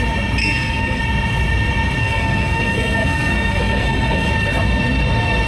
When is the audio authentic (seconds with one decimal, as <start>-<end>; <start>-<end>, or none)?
0.0-0.4; 1.0-2.0; 4.3-5.5